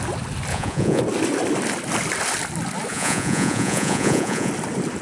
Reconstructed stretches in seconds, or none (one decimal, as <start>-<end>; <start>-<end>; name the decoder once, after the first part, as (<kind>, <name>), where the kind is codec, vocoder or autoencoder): 0.5-1.0 (vocoder, Vocos); 2.9-4.5